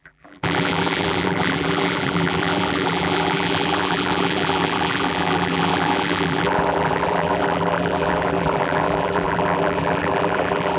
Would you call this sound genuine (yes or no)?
no